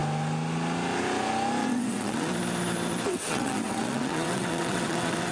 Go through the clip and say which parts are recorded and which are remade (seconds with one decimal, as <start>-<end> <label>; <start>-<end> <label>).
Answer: 0.0-1.6 recorded; 1.6-2.3 remade; 2.3-3.1 recorded; 3.1-5.3 remade